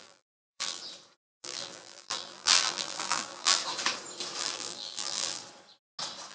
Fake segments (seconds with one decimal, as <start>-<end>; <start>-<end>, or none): 0.0-0.8; 1.4-3.6; 4.4-5.4